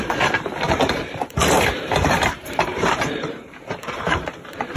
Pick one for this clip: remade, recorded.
remade